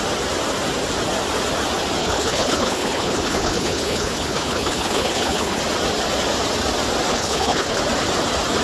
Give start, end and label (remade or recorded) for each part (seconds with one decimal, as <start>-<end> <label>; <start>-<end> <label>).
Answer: 0.0-2.0 recorded; 2.0-5.6 remade; 5.6-7.1 recorded; 7.1-7.8 remade; 7.8-8.6 recorded